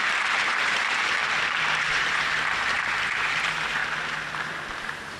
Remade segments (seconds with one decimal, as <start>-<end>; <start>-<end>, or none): 0.0-1.2; 1.8-3.8; 4.8-5.2